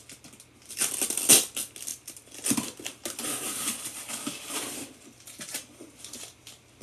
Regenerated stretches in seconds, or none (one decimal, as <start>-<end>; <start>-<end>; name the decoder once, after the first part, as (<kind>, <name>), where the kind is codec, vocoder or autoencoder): 1.9-6.0 (vocoder, BigVGAN v2)